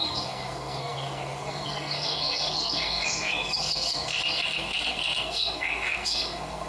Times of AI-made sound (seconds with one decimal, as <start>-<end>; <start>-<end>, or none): 0.0-6.7